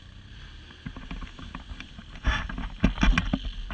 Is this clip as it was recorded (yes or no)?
yes